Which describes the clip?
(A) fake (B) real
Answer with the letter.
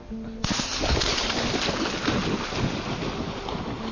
B